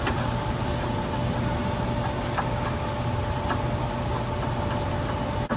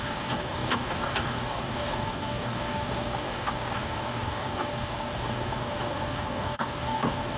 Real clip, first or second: first